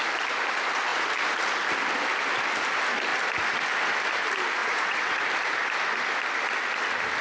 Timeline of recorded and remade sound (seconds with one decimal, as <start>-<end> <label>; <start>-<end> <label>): 0.0-4.6 recorded; 4.6-5.2 remade; 5.2-7.2 recorded